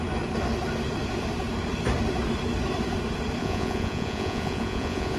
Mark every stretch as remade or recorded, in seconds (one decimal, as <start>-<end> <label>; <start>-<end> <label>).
0.0-3.4 recorded; 3.4-5.2 remade